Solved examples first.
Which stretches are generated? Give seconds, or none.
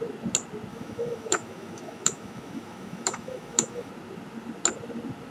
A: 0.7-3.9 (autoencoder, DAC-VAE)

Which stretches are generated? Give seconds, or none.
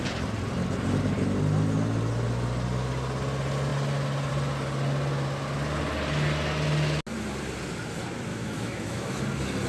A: 8.3-9.2 (autoencoder, DAC-VAE)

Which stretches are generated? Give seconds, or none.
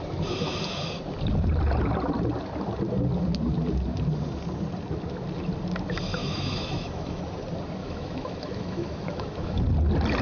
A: 6.2-7.2 (autoencoder, DAC-VAE); 7.8-9.6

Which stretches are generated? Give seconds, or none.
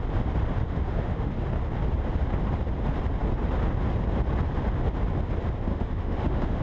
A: 0.6-1.3 (autoencoder, DAC-VAE); 5.7-6.6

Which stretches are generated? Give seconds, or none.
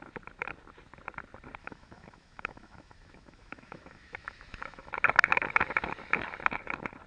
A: 1.6-4.9 (autoencoder, DAC-VAE)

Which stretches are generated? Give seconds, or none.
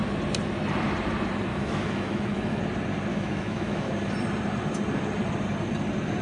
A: 1.5-2.6 (autoencoder, DAC-VAE); 3.1-3.9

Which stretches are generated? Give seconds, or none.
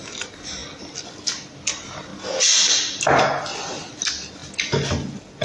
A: none